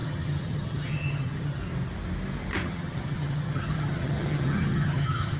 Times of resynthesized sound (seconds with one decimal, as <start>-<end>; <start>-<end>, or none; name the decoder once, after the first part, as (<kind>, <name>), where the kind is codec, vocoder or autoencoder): 0.0-1.6 (vocoder, HiFi-GAN); 2.6-5.4